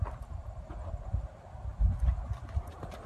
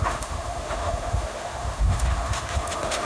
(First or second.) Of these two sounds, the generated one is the second